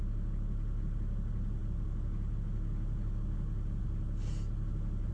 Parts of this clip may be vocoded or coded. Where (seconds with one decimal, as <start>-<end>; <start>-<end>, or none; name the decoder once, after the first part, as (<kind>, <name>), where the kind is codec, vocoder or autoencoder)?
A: none